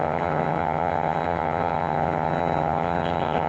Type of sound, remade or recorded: remade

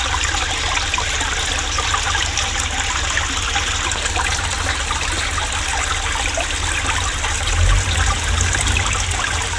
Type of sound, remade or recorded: recorded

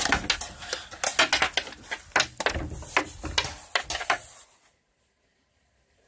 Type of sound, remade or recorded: recorded